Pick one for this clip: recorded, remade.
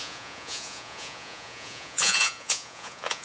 remade